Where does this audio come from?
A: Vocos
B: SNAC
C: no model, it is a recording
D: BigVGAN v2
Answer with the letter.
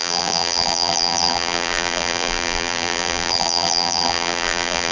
D